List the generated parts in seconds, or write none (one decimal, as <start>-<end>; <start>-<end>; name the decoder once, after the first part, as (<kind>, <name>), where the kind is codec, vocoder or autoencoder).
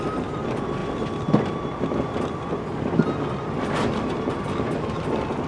0.0-0.8 (vocoder, BigVGAN v2); 4.1-5.5